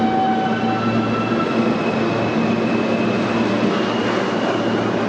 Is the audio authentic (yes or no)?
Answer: yes